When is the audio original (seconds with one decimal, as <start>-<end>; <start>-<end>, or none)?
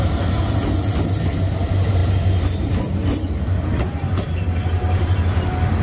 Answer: 0.0-5.8